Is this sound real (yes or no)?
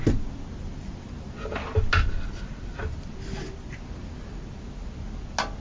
yes